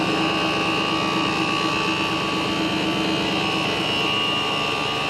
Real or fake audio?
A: real